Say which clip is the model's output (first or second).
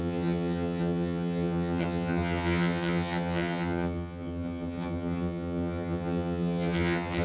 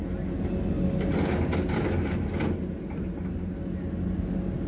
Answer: first